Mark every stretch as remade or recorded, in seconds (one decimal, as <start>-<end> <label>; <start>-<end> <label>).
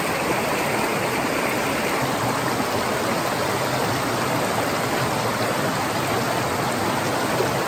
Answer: 0.0-7.7 recorded